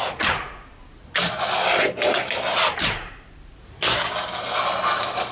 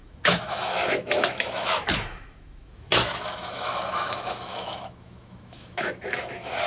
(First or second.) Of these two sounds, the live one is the first